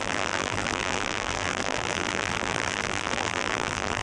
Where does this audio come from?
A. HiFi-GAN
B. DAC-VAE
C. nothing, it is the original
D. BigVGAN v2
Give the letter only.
D